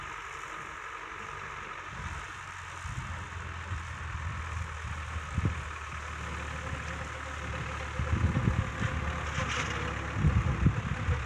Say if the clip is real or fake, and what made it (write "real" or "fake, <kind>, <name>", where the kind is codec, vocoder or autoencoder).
real